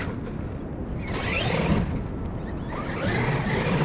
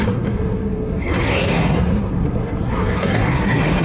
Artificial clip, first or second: second